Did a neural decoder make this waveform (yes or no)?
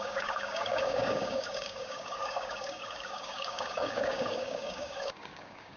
yes